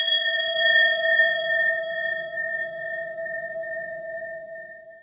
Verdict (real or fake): fake